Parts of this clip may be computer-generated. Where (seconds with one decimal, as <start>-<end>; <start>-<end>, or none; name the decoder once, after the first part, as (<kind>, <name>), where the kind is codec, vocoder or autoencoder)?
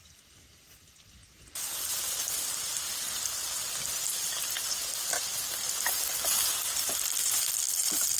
none